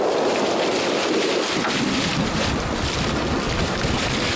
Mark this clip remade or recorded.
recorded